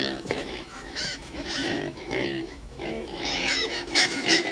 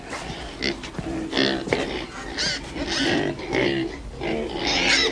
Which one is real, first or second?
second